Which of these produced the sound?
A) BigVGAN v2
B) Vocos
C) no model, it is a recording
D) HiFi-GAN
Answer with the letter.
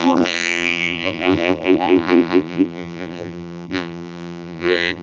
A